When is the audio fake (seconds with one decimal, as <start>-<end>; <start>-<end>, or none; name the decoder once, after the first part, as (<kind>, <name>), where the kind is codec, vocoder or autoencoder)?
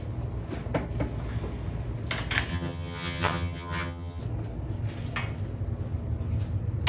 2.5-4.2 (vocoder, HiFi-GAN)